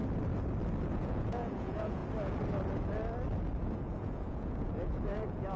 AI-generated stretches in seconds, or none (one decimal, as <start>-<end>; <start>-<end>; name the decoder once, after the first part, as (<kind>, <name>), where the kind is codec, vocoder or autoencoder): 0.9-2.0 (vocoder, Vocos); 3.6-5.6